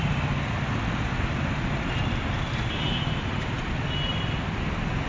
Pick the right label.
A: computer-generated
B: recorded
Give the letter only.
B